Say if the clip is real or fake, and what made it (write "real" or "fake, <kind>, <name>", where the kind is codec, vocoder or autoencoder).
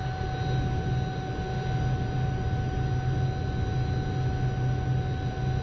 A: real